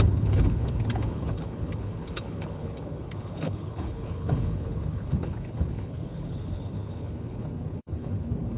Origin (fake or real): fake